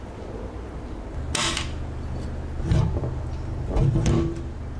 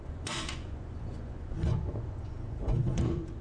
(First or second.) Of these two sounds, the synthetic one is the second